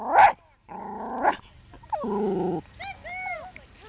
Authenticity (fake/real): real